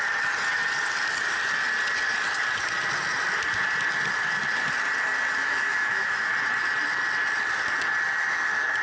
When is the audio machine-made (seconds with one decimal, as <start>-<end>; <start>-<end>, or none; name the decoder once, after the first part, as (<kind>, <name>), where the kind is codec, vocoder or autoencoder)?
5.4-6.3 (autoencoder, DAC-VAE)